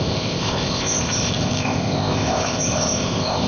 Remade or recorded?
remade